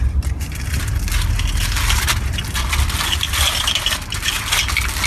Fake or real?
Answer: real